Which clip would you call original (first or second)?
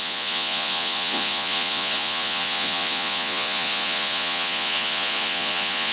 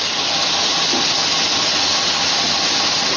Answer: second